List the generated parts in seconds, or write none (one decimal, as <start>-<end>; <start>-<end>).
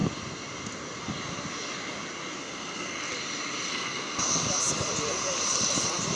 2.4-3.0; 3.7-4.3